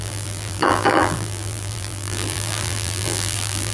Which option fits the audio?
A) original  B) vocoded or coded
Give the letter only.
B